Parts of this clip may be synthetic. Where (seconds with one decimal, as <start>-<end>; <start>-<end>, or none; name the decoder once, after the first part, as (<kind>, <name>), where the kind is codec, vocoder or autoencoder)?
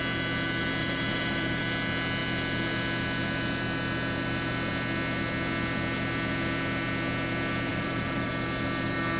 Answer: 0.8-1.6 (vocoder, BigVGAN v2); 7.7-8.3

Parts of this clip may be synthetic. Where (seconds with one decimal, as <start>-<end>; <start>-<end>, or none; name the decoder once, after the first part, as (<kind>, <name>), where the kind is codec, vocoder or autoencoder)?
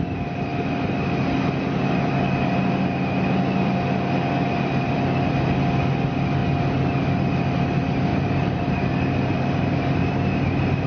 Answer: 8.1-8.8 (vocoder, BigVGAN v2)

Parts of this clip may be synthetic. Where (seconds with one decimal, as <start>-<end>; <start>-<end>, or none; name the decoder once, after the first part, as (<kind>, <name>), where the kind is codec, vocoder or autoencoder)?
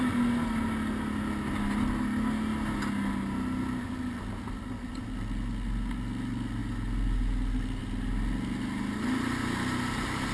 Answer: none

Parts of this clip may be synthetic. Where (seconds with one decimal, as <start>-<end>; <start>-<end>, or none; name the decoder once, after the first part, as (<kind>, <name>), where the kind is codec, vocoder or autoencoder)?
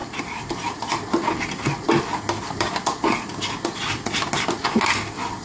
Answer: none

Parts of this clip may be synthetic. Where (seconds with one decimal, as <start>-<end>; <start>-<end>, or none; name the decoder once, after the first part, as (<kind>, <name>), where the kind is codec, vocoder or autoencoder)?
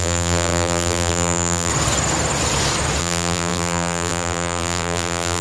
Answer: 0.0-1.7 (vocoder, BigVGAN v2); 3.0-5.4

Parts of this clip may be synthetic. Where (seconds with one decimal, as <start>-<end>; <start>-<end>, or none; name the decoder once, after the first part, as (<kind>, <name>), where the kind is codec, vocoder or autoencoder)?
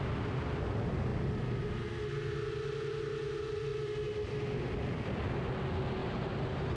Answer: 1.1-1.8 (vocoder, BigVGAN v2); 6.0-6.8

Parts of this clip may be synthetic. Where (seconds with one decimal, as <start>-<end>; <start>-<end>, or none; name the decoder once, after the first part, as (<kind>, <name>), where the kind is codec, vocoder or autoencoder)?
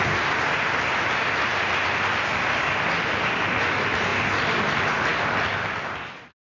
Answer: 5.1-6.6 (vocoder, BigVGAN v2)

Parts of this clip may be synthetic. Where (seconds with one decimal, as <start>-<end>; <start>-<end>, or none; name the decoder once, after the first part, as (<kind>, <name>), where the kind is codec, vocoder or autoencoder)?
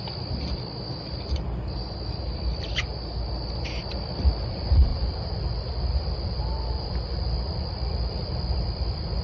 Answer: 4.9-9.2 (vocoder, BigVGAN v2)